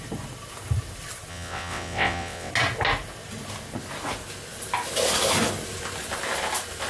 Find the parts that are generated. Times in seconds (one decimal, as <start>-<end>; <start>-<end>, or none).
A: 1.3-2.5